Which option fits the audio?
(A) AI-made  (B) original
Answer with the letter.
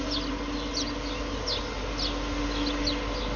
B